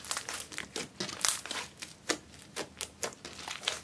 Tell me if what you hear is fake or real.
real